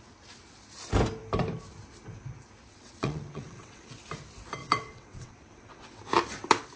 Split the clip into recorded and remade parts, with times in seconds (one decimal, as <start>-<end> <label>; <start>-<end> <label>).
0.0-2.7 recorded; 2.7-4.0 remade; 4.0-4.6 recorded; 4.6-6.0 remade; 6.0-6.8 recorded